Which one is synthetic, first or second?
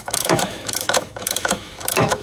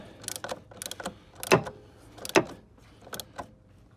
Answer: first